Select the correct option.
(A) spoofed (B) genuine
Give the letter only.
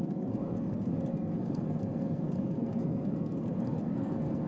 A